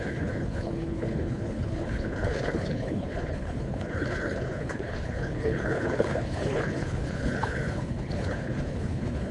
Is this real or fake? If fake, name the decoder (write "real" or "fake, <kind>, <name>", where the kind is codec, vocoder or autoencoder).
fake, codec, HILCodec